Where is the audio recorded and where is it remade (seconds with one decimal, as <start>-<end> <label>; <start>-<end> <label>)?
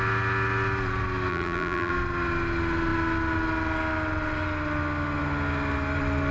0.0-1.3 recorded; 1.3-1.9 remade; 1.9-6.3 recorded